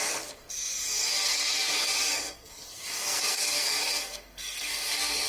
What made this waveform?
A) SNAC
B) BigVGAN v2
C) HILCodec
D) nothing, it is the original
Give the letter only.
A